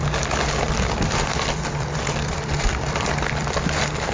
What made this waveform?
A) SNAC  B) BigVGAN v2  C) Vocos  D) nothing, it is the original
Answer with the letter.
B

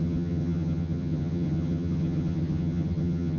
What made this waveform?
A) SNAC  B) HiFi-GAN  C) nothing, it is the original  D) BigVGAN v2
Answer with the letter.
B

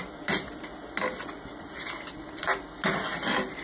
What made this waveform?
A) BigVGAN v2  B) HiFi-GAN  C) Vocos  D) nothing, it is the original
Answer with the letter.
D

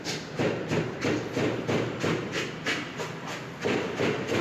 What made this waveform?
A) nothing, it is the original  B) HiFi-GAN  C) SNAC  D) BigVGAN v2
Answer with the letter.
A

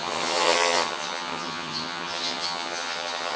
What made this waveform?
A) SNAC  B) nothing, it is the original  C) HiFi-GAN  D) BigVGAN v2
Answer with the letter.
C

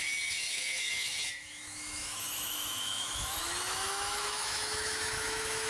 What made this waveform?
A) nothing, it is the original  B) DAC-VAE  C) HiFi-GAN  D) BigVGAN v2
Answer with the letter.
B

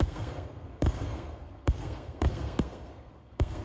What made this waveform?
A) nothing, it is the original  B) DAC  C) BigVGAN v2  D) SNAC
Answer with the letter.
D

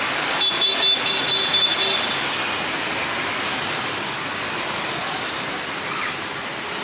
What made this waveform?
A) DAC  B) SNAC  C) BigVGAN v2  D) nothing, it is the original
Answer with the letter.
D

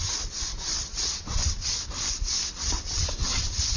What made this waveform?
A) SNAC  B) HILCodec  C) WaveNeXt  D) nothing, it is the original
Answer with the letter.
C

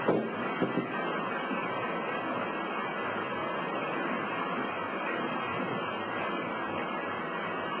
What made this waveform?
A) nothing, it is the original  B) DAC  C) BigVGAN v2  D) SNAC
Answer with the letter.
A